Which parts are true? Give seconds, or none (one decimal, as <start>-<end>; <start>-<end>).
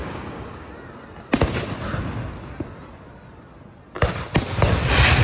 0.7-5.2